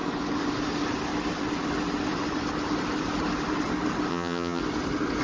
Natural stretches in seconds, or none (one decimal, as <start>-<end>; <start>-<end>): 0.0-4.1; 4.6-5.2